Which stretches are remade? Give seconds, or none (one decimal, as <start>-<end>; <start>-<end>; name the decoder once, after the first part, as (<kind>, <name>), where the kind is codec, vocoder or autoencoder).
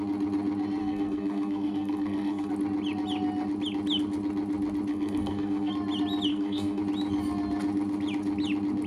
0.8-2.5 (codec, SNAC); 4.9-5.7; 6.3-6.8